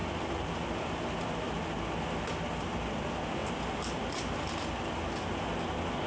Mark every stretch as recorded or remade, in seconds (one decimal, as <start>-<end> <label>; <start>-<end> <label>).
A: 0.0-1.5 remade; 1.5-3.4 recorded; 3.4-4.5 remade; 4.5-6.1 recorded